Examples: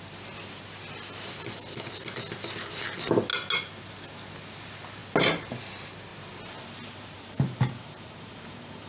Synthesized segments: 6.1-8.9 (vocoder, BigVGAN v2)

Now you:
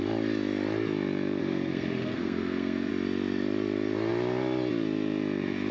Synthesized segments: 1.4-2.9 (codec, SNAC)

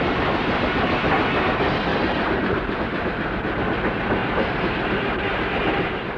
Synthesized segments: 1.9-2.8 (vocoder, BigVGAN v2)

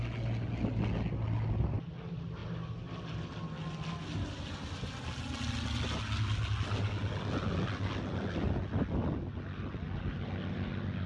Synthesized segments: none

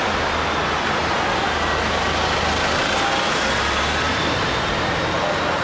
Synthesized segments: none

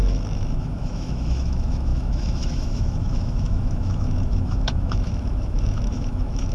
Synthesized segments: 0.0-6.5 (autoencoder, DAC-VAE)

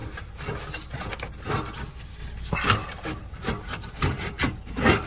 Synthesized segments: 3.2-5.1 (vocoder, BigVGAN v2)